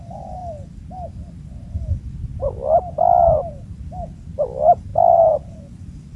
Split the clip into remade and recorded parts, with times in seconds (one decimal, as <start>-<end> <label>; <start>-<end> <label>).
0.0-6.2 remade